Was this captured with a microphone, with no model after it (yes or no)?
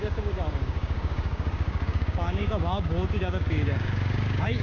no